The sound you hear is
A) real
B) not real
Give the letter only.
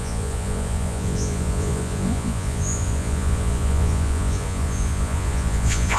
B